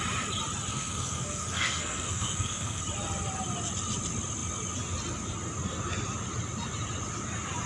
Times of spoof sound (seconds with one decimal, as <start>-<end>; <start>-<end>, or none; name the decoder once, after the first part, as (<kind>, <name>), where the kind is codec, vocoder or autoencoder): 0.7-2.8 (codec, SNAC)